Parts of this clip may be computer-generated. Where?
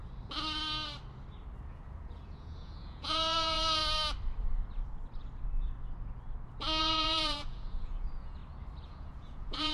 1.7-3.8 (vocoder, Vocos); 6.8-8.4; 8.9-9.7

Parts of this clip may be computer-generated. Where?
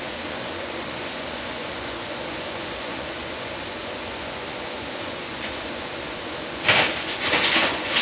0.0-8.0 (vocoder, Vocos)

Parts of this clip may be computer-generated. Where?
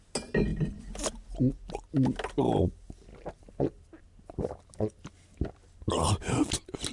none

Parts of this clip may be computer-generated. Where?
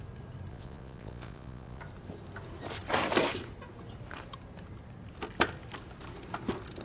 0.5-1.8 (vocoder, Vocos)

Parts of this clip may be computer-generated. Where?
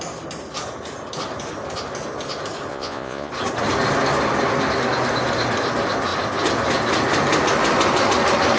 2.7-3.3 (vocoder, Vocos)